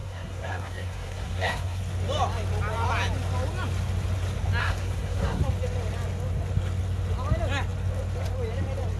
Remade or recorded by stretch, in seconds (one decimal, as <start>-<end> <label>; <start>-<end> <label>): 0.0-1.8 remade; 1.8-4.6 recorded; 4.6-5.4 remade; 5.4-9.0 recorded